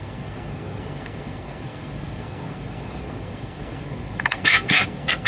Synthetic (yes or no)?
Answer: yes